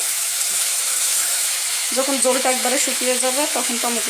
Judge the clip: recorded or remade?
remade